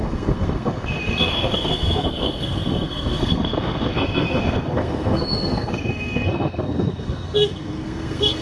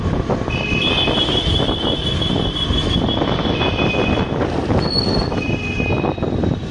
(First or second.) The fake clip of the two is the first